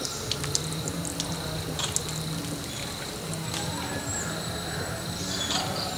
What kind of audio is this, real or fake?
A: real